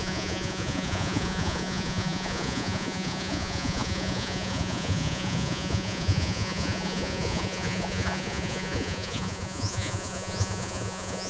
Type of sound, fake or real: fake